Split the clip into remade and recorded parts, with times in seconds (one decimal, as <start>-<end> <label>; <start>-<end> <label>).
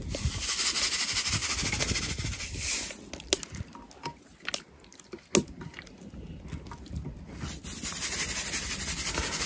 0.0-9.5 recorded